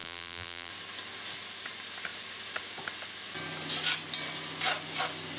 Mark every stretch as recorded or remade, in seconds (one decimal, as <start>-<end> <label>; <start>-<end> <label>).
0.0-0.7 remade; 0.7-5.4 recorded